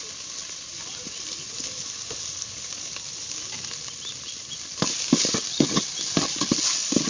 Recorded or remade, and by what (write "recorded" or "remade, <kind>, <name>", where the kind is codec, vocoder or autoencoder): recorded